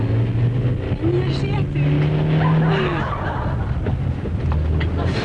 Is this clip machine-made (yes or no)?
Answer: no